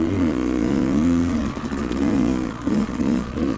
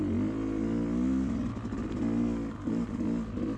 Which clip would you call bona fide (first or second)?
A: second